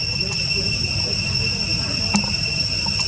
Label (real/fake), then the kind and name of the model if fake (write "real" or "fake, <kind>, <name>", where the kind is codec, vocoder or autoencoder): real